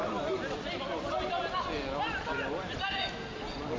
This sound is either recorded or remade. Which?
recorded